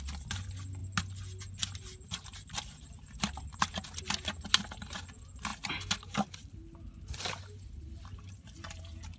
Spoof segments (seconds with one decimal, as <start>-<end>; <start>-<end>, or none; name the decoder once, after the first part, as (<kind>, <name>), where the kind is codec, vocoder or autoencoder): none